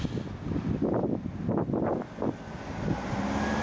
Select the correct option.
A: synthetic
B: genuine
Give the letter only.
B